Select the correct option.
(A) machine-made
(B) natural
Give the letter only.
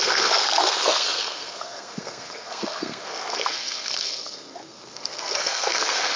A